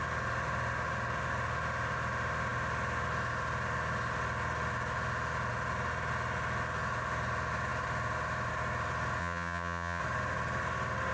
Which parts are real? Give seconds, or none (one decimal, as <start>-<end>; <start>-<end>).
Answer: 0.0-9.2; 10.0-11.1